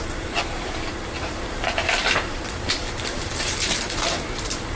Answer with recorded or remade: remade